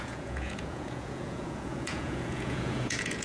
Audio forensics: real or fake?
fake